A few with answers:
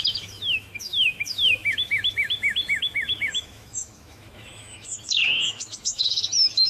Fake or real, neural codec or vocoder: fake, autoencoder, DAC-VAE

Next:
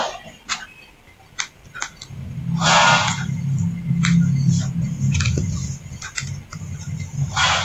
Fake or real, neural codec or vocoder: real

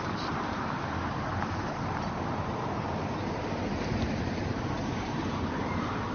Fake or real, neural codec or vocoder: fake, vocoder, BigVGAN v2